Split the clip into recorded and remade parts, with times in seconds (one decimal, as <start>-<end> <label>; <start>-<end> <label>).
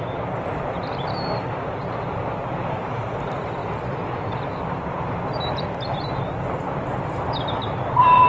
0.0-2.2 remade; 2.2-2.8 recorded; 2.8-8.3 remade